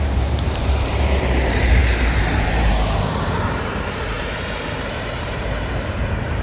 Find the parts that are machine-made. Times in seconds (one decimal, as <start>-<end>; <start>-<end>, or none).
0.0-6.4